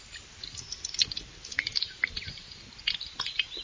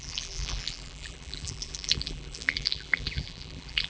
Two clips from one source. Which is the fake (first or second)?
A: second